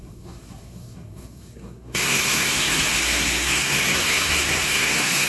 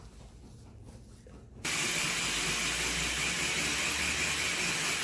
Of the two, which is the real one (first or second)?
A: second